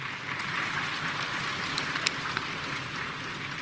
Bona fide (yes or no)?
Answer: yes